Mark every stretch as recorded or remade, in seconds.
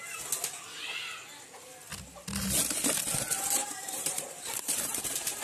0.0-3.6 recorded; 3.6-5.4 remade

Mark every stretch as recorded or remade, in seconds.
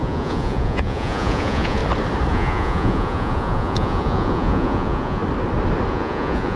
0.0-1.8 remade; 1.8-2.3 recorded; 2.3-5.2 remade; 5.2-5.9 recorded; 5.9-6.6 remade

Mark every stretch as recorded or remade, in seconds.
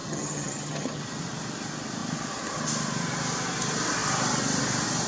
0.0-1.0 remade; 1.0-5.1 recorded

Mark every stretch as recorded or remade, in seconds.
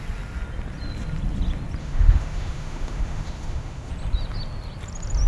0.0-1.8 recorded; 1.8-3.9 remade; 3.9-5.3 recorded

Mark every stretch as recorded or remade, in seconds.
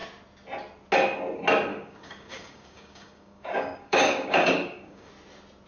0.0-1.7 recorded; 1.7-5.1 remade; 5.1-5.7 recorded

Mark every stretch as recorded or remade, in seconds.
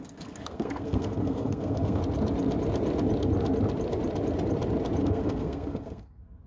0.0-2.0 remade; 2.0-5.0 recorded; 5.0-6.5 remade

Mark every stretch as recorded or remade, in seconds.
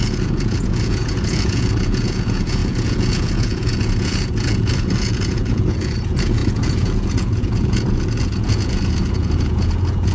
0.0-10.1 remade